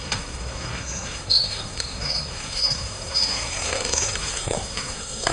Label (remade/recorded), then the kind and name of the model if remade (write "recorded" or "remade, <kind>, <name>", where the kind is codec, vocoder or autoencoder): remade, codec, SNAC